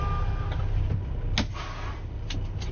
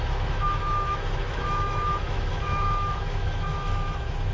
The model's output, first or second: second